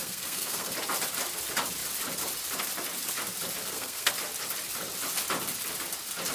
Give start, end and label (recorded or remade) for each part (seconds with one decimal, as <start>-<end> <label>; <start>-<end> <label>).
0.0-0.7 remade; 0.7-3.6 recorded; 3.6-4.1 remade; 4.1-6.3 recorded